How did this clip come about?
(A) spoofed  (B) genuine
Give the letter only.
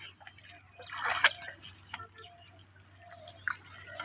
B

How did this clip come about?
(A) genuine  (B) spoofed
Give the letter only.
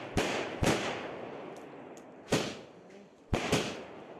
A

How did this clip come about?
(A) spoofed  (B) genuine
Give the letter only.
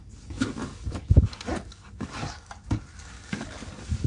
A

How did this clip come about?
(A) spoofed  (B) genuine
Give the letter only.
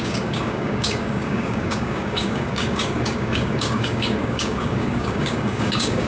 A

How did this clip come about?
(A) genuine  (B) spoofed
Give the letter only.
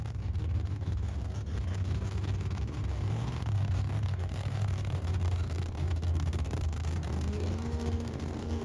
B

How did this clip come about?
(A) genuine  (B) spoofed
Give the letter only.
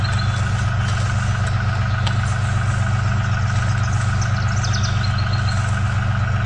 A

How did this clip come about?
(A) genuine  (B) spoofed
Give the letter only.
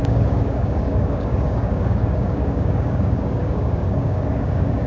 B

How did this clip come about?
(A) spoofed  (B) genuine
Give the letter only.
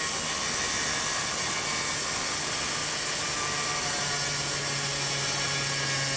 B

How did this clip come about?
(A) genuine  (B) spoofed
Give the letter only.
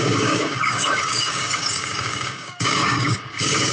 B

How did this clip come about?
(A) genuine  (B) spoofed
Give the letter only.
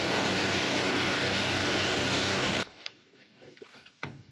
B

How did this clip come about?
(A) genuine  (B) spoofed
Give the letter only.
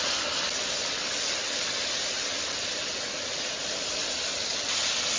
A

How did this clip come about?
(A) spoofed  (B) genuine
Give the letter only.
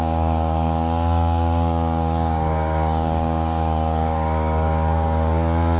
A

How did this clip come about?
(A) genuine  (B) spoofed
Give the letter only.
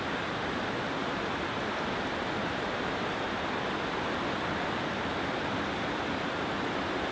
A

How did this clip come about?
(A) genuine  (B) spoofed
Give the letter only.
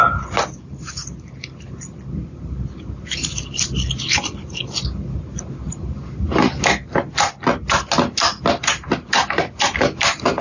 A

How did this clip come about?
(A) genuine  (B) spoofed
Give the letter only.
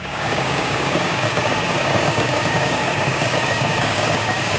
B